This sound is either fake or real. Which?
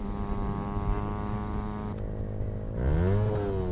real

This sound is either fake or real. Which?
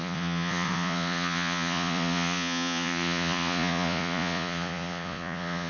fake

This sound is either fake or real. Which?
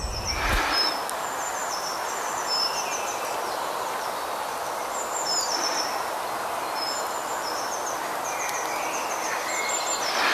real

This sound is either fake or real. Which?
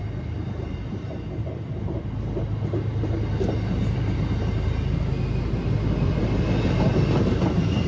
real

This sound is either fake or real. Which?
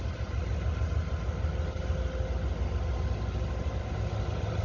real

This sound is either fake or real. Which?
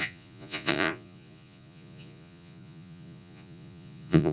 fake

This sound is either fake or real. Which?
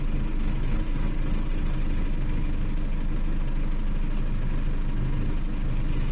real